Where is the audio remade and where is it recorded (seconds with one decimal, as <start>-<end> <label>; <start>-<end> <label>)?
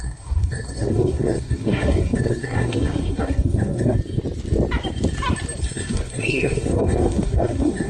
0.0-4.0 remade; 4.0-5.6 recorded; 5.6-7.9 remade